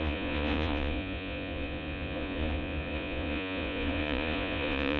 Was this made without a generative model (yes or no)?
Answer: no